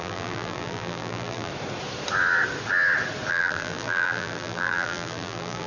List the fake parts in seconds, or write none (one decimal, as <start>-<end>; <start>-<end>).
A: 0.0-1.5; 3.3-5.7

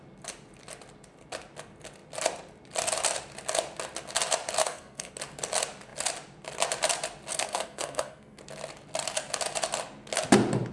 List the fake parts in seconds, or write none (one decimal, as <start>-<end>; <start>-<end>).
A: 4.6-5.1; 7.3-8.4

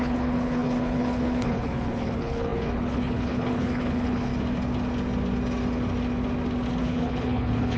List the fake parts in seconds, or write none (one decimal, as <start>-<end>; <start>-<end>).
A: 0.0-4.3; 6.8-7.8

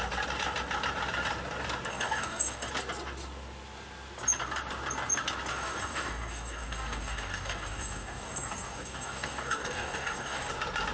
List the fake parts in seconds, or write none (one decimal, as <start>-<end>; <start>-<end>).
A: 1.9-2.7; 5.5-10.5